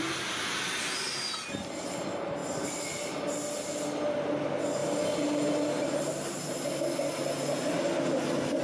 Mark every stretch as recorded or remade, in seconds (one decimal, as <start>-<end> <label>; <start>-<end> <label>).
0.0-8.6 recorded